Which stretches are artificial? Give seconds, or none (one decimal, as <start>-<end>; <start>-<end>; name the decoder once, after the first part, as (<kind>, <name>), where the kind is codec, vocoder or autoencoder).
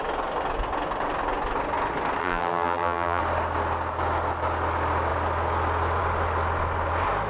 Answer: 2.2-3.2 (vocoder, BigVGAN v2)